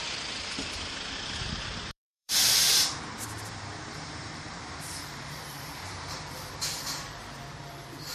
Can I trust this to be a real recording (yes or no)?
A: no